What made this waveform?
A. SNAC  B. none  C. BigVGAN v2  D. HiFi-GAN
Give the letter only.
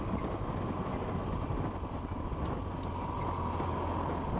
B